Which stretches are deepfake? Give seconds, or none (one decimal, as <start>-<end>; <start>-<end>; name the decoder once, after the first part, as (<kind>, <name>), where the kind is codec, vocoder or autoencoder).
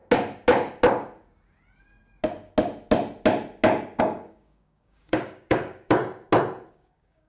4.0-6.0 (codec, DAC); 6.7-7.3